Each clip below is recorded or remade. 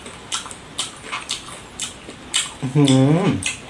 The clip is recorded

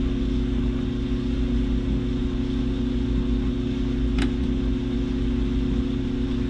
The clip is recorded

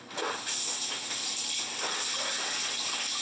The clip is recorded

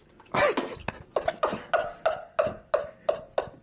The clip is recorded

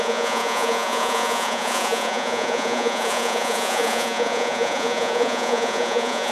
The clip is remade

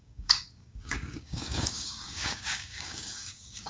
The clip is remade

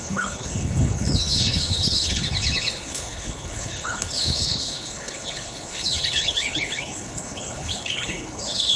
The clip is remade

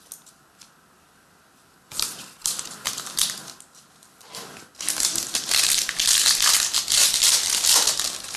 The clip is recorded